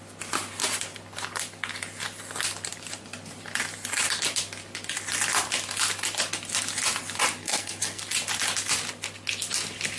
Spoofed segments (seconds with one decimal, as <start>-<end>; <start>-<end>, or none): 7.4-8.0